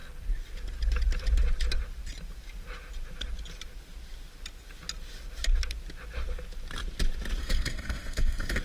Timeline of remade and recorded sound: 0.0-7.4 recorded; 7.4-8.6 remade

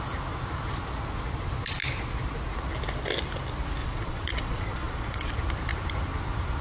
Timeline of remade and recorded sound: 0.0-3.8 recorded; 3.8-5.3 remade; 5.3-6.6 recorded

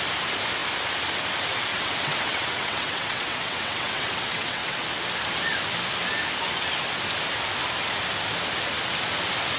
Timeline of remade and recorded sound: 0.0-1.7 recorded; 1.7-4.8 remade; 4.8-9.6 recorded

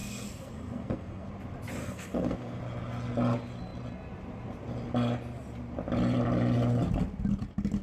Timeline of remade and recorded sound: 0.0-1.3 remade; 1.3-1.8 recorded; 1.8-2.6 remade; 2.6-7.8 recorded

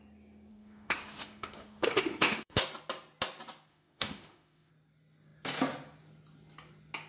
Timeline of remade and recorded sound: 0.0-0.5 recorded; 0.5-2.6 remade; 2.6-3.7 recorded; 3.7-4.7 remade; 4.7-7.1 recorded

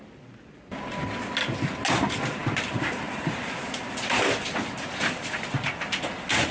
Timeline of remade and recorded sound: 0.0-2.4 recorded; 2.4-4.2 remade; 4.2-6.5 recorded